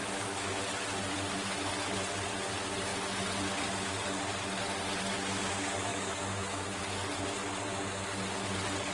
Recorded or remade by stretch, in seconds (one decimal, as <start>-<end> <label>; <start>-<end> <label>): 0.0-0.6 remade; 0.6-5.9 recorded; 5.9-6.8 remade; 6.8-8.9 recorded